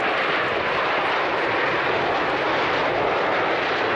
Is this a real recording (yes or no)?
yes